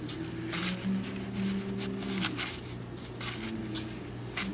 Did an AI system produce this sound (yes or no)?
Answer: no